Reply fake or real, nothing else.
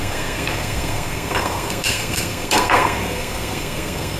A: fake